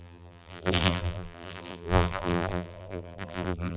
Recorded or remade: remade